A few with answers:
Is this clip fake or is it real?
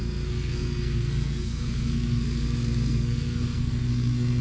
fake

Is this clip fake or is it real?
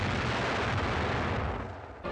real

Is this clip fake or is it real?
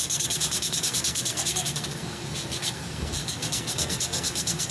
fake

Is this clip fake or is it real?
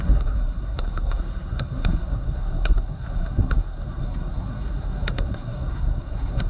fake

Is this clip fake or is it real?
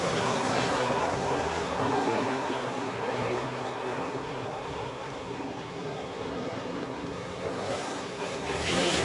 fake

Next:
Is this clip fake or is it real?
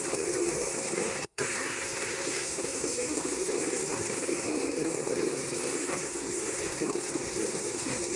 fake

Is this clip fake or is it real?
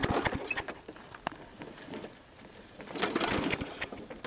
real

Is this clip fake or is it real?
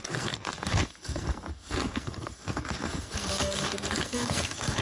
fake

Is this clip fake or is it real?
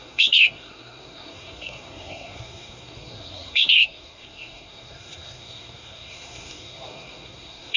fake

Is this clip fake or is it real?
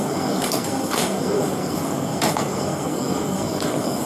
fake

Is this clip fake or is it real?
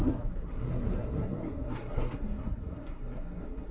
fake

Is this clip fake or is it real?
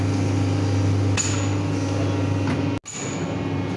real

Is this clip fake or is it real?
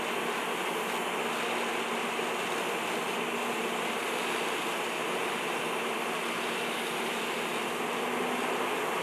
real